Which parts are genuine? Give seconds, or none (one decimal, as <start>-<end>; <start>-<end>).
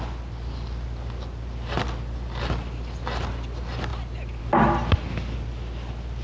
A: 0.0-6.2